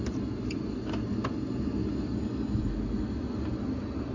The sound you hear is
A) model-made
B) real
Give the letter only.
B